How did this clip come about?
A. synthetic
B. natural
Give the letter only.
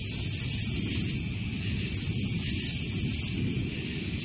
B